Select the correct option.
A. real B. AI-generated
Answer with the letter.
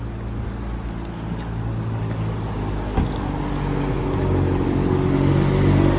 A